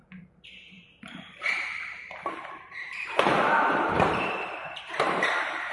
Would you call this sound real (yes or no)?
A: no